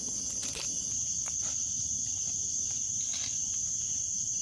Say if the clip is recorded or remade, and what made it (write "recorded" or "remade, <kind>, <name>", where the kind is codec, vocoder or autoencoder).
recorded